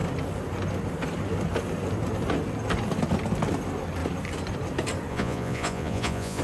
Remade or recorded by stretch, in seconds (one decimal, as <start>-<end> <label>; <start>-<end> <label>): 0.0-5.1 recorded; 5.1-6.4 remade